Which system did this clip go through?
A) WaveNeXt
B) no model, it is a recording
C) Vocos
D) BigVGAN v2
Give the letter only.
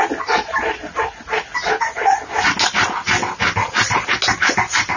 B